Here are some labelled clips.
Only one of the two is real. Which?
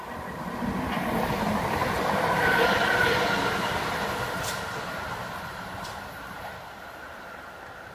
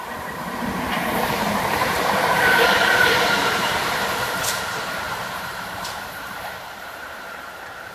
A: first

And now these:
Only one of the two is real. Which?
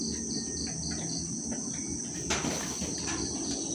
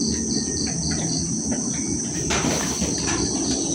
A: first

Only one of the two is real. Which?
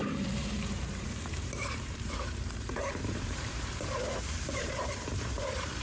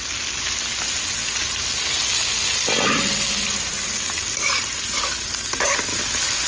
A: second